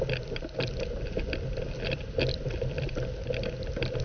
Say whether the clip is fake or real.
real